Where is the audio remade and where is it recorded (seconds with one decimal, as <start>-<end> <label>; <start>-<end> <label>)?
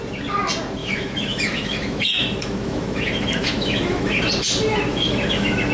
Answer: 0.0-0.8 recorded; 0.8-4.2 remade; 4.2-4.7 recorded; 4.7-5.7 remade